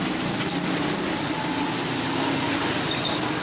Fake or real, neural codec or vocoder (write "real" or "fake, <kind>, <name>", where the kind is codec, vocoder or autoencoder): fake, vocoder, BigVGAN v2